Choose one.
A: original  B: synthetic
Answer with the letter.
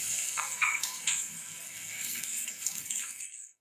B